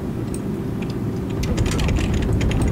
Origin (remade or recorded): recorded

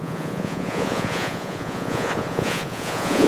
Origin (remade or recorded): remade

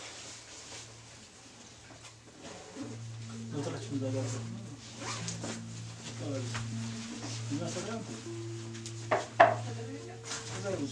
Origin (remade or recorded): recorded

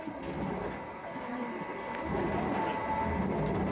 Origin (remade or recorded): recorded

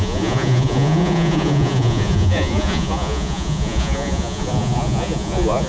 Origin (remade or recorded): remade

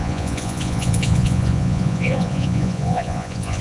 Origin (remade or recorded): remade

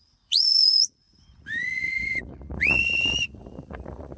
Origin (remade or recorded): remade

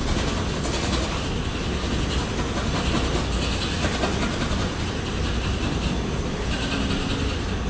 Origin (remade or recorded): recorded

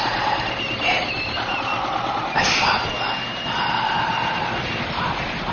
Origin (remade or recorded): recorded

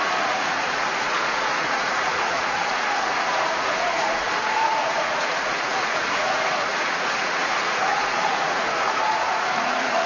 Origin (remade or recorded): remade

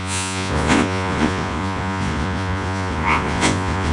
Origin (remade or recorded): remade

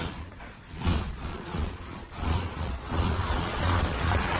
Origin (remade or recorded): remade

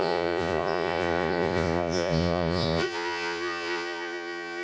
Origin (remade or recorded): remade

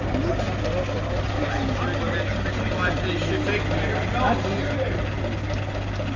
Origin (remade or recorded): recorded